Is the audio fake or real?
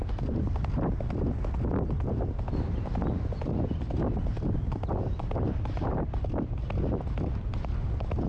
real